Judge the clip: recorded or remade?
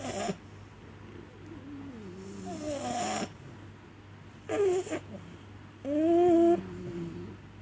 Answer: recorded